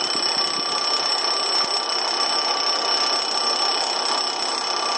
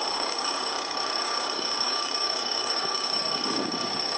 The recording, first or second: first